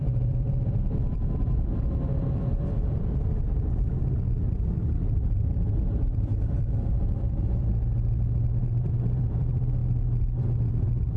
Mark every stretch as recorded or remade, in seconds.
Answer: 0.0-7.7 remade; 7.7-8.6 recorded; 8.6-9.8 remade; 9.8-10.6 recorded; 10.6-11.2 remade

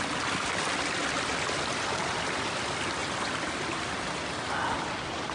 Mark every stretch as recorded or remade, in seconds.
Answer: 0.0-5.3 recorded